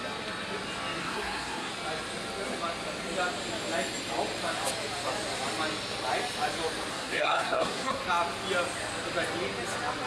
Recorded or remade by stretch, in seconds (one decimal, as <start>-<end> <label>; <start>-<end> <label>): 0.0-1.0 recorded; 1.0-1.7 remade; 1.7-6.9 recorded; 6.9-8.0 remade; 8.0-10.1 recorded